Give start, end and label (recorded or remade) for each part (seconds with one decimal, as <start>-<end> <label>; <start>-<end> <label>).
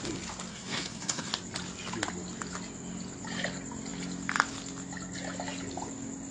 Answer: 0.0-0.5 recorded; 0.5-1.3 remade; 1.3-6.3 recorded